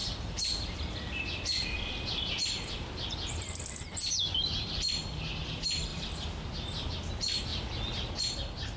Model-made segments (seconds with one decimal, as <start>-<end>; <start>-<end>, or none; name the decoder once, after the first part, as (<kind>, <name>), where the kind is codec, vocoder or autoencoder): 0.0-5.2 (vocoder, BigVGAN v2); 5.9-6.9